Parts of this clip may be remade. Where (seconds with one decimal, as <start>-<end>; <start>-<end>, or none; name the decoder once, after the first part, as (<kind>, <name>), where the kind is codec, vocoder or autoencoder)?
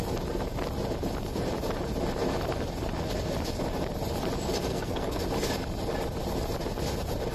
4.7-5.2 (codec, SNAC)